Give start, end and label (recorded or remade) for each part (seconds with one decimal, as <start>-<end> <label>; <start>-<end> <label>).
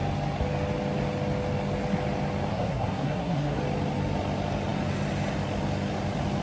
0.0-2.5 recorded; 2.5-3.6 remade; 3.6-6.4 recorded